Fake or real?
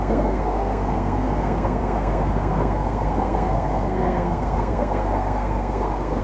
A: fake